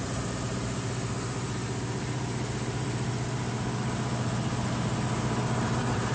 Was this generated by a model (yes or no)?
no